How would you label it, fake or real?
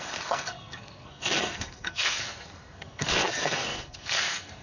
fake